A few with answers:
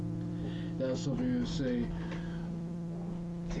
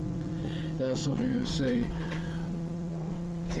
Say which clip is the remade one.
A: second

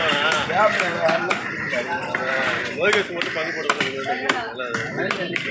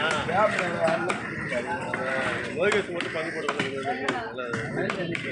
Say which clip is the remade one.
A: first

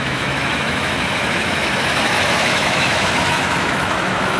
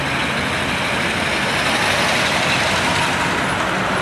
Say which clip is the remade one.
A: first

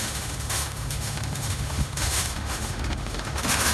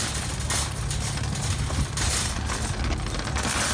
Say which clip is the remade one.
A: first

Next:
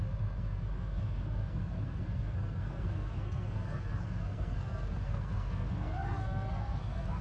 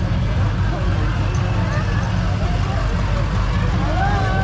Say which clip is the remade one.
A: first